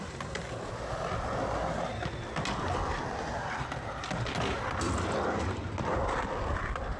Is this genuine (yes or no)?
yes